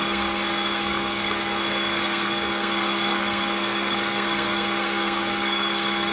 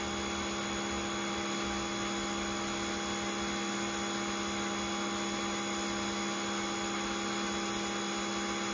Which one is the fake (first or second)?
first